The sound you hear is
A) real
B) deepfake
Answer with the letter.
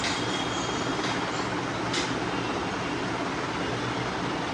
A